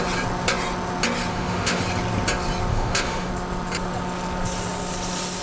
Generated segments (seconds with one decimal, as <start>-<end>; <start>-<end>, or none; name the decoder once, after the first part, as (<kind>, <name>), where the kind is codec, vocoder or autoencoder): 1.3-1.8 (autoencoder, DAC-VAE); 2.7-3.3